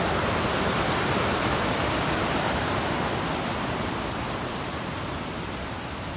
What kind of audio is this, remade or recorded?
remade